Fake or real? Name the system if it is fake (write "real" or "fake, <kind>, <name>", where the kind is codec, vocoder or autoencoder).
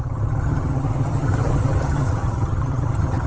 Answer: fake, vocoder, HiFi-GAN